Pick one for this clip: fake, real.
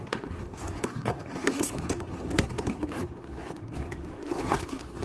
fake